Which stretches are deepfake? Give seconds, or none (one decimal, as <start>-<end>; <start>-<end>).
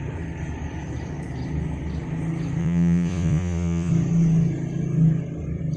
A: 2.6-3.9